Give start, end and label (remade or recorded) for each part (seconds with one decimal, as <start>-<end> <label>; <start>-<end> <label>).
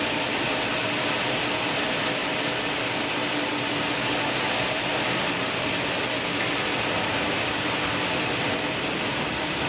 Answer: 0.0-9.7 recorded